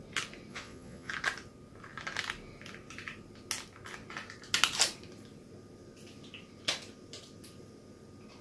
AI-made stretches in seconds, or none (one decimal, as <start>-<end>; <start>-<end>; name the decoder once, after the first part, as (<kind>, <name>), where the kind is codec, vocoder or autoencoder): 0.5-1.1 (vocoder, Vocos)